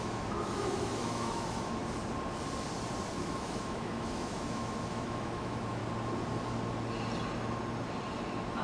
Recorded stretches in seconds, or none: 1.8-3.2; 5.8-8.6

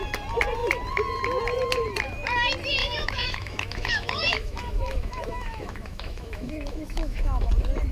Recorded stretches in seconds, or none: 0.0-2.8; 7.5-7.9

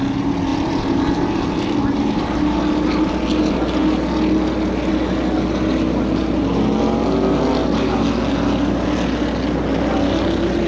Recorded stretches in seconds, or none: 0.0-10.7

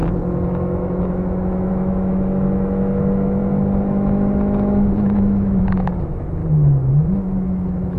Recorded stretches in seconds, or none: 6.4-6.9

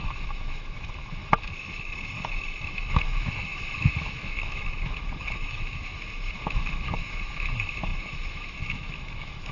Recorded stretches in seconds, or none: none

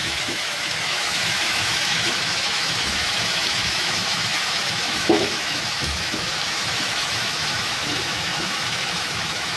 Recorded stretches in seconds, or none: none